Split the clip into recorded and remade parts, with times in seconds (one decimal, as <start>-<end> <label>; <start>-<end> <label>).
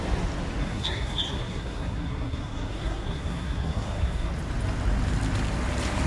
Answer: 0.0-0.6 recorded; 0.6-4.3 remade; 4.3-6.1 recorded